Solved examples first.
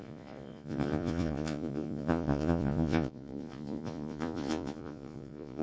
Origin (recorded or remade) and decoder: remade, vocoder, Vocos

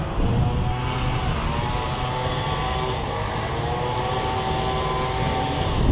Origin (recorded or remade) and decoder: recorded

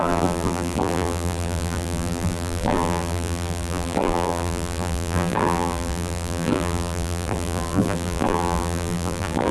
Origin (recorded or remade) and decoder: remade, vocoder, BigVGAN v2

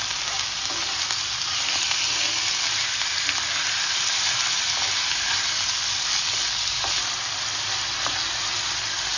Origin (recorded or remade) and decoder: recorded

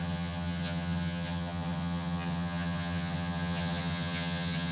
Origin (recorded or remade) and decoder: remade, vocoder, HiFi-GAN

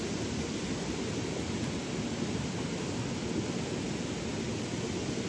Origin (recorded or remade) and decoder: recorded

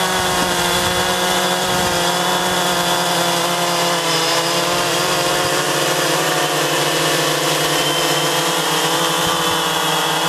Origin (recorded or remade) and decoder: remade, vocoder, BigVGAN v2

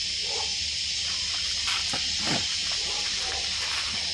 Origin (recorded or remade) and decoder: recorded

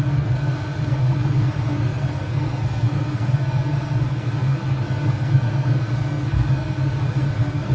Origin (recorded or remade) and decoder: remade, codec, SNAC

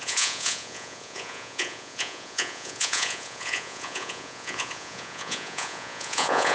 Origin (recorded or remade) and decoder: remade, vocoder, Vocos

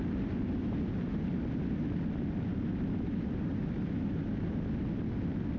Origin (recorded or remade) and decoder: recorded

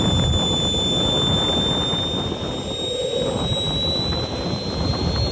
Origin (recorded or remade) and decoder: recorded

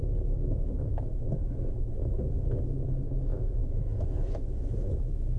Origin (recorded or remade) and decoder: remade, autoencoder, DAC-VAE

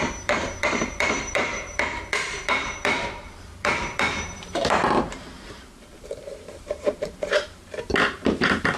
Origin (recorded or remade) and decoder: remade, vocoder, BigVGAN v2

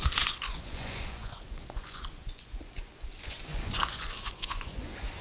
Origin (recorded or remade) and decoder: remade, vocoder, Vocos